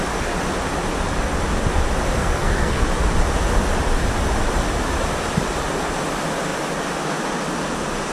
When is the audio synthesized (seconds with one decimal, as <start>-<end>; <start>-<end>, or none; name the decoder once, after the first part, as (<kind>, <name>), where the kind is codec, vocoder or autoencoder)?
2.2-2.8 (codec, SNAC)